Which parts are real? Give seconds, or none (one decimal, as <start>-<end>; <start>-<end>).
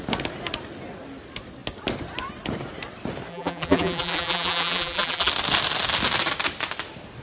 0.0-3.3; 5.3-7.2